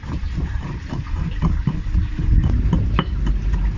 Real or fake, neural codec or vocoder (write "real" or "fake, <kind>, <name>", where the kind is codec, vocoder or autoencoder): real